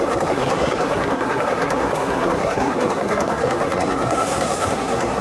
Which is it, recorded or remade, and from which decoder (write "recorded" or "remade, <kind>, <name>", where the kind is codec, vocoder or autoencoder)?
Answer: remade, codec, SNAC